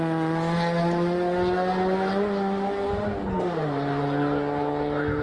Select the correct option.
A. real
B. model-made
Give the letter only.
A